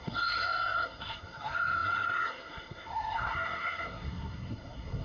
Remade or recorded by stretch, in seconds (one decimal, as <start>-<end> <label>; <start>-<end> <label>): 0.0-5.0 remade